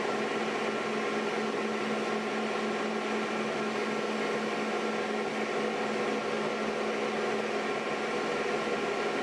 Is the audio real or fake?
real